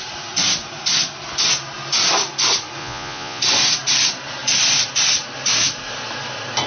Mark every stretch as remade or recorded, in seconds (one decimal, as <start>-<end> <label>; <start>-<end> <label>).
0.0-2.8 recorded; 2.8-3.4 remade; 3.4-6.7 recorded